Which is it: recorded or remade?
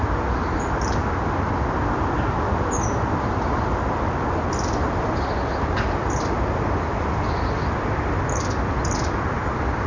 recorded